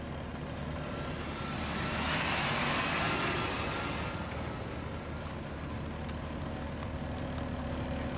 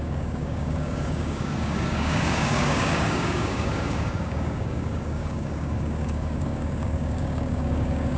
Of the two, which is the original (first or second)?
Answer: first